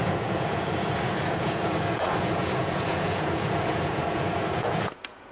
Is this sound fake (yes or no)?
yes